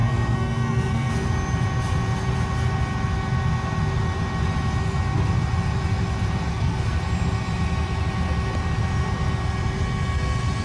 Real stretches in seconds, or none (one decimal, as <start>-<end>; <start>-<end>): 1.1-6.5; 7.0-10.6

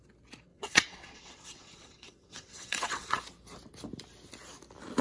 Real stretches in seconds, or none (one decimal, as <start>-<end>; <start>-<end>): 0.0-0.5; 3.2-5.0

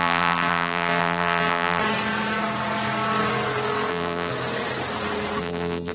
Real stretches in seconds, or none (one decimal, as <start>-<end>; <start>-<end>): 1.8-3.9; 4.3-5.4

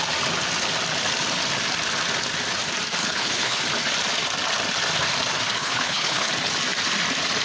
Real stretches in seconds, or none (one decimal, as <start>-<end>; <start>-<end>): 0.0-3.0; 3.6-5.6; 6.3-7.4

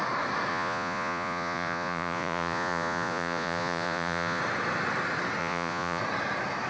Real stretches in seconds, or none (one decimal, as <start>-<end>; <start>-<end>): 0.0-0.5; 4.4-5.4; 6.0-6.7

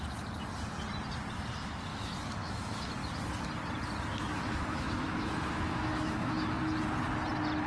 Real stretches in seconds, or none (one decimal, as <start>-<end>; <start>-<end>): 0.0-1.9; 2.9-4.1; 6.6-7.7

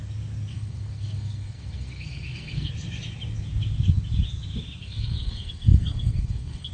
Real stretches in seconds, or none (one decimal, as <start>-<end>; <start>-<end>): 0.0-0.5; 2.7-4.8

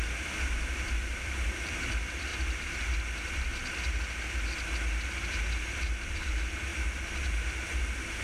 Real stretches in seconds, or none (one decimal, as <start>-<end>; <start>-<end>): 2.3-6.2; 6.7-7.7